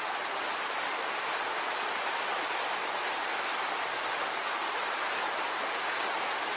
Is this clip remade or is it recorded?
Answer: recorded